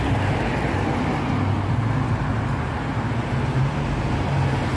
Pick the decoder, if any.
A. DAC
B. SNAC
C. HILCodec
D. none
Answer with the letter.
D